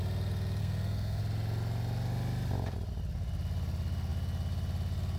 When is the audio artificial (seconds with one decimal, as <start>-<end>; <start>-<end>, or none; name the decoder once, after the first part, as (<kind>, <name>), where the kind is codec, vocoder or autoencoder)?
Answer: 0.6-1.2 (codec, SNAC)